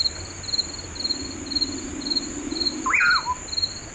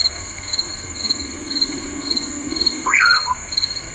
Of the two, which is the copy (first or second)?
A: second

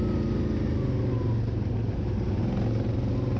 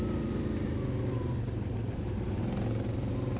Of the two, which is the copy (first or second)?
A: second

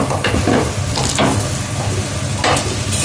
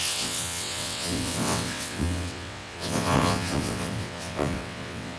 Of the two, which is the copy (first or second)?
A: second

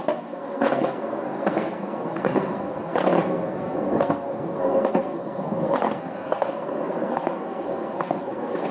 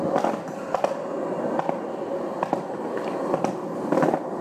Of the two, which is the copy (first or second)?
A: first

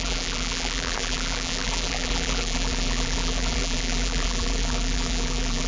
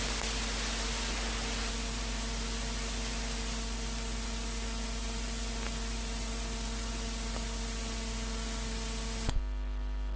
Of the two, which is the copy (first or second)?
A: first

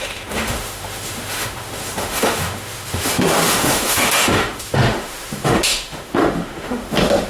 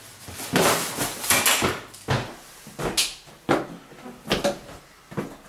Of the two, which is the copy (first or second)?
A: first